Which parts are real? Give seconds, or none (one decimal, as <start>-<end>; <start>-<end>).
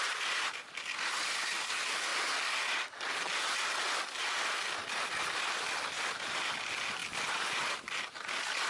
0.0-8.7